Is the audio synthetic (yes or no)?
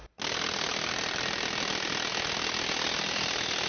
no